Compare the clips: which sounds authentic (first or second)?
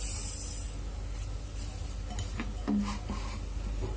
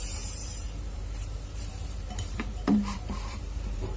first